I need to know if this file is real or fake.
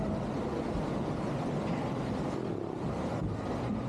real